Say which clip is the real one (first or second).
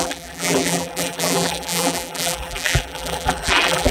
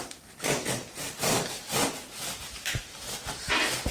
second